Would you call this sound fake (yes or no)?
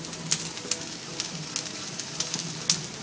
no